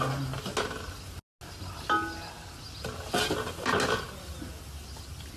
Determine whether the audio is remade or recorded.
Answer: recorded